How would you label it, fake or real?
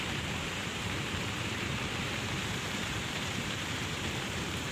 fake